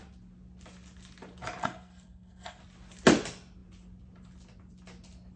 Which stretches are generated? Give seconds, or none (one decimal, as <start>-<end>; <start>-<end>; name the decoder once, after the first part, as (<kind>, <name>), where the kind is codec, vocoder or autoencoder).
1.6-2.6 (codec, SNAC)